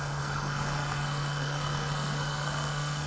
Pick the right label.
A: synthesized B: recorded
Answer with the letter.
A